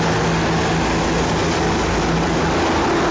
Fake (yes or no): no